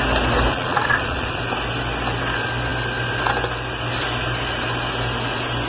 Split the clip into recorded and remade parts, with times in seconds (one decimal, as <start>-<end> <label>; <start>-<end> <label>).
0.0-0.5 recorded; 0.5-1.4 remade; 1.4-5.7 recorded